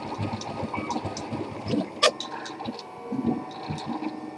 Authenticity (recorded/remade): recorded